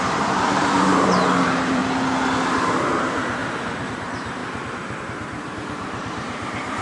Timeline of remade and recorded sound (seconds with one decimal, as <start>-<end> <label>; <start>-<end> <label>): 0.0-1.8 remade; 1.8-2.6 recorded; 2.6-3.4 remade; 3.4-3.9 recorded; 3.9-4.4 remade; 4.4-5.0 recorded; 5.0-6.8 remade